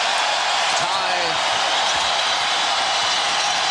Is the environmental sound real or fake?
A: real